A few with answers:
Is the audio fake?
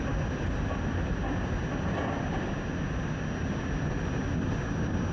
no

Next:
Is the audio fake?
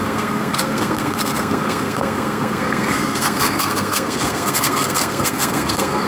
yes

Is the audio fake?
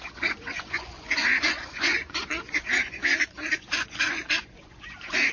yes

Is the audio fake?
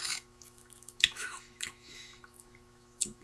yes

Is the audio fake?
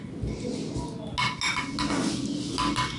no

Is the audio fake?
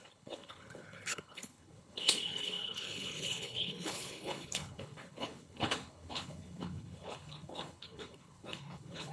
yes